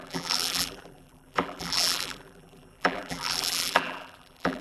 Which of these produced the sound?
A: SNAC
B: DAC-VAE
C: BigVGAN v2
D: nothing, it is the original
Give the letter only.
C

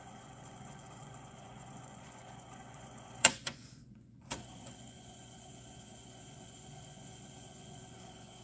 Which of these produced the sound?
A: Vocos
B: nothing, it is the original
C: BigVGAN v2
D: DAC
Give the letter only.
A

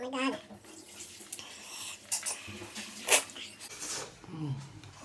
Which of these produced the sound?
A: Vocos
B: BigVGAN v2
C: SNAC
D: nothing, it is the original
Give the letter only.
D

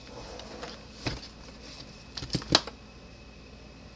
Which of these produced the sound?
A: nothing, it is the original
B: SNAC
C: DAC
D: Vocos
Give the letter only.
A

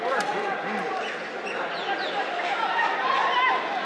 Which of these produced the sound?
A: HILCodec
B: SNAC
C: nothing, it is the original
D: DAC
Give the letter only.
C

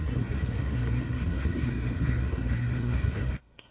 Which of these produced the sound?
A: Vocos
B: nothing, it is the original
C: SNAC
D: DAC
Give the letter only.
C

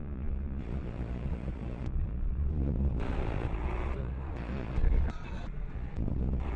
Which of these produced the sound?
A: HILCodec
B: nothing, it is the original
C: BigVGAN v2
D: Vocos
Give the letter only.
D